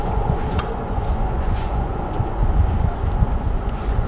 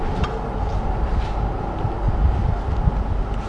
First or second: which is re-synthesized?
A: first